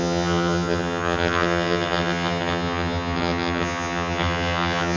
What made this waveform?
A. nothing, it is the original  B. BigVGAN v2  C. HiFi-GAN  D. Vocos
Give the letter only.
C